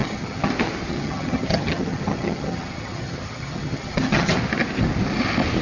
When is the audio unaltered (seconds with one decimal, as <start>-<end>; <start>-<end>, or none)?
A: 0.5-0.9; 4.3-5.6